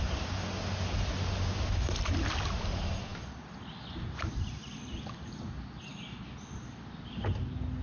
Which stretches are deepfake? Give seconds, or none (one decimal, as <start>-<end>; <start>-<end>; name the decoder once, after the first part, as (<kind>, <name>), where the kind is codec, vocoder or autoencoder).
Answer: none